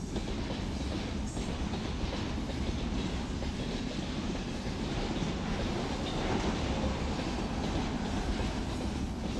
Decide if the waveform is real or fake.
real